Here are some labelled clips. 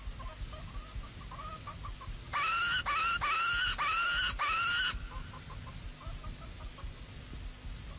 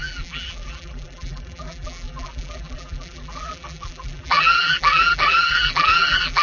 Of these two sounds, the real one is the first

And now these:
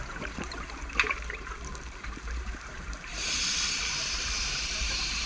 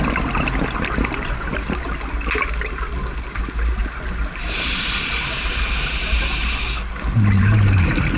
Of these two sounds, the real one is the second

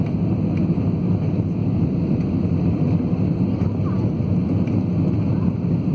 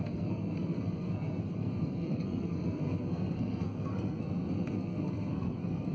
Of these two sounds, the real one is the first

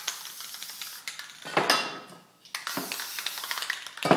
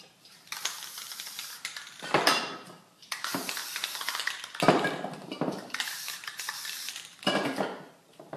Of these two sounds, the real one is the first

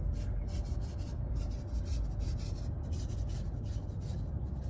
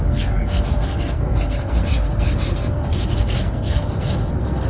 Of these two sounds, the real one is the first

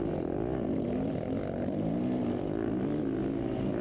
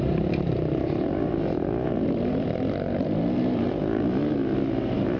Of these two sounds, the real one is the first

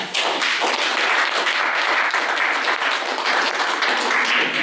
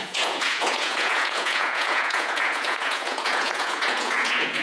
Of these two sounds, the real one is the first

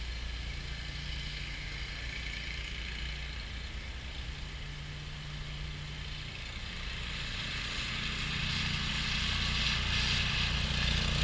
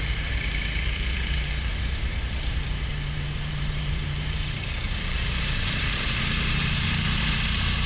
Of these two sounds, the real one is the first